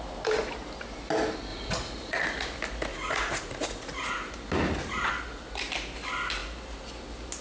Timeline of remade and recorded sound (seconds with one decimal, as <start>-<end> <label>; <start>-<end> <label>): 0.0-1.5 recorded; 1.5-2.2 remade; 2.2-2.9 recorded; 2.9-4.3 remade; 4.3-7.4 recorded